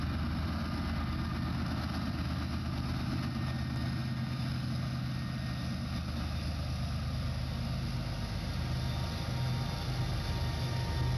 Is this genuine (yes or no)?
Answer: yes